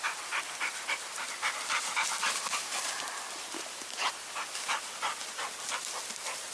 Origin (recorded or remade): recorded